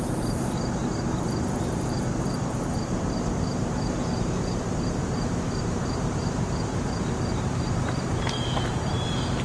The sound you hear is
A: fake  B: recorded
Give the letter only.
A